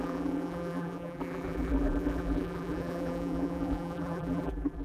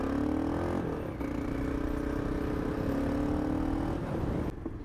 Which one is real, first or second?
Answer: second